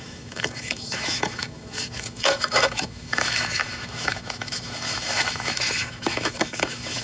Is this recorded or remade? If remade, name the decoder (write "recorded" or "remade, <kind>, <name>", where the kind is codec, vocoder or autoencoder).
remade, autoencoder, DAC-VAE